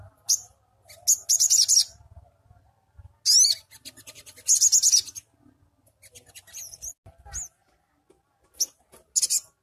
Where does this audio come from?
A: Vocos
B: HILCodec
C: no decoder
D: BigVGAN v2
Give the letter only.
C